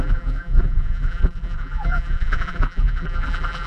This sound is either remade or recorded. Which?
remade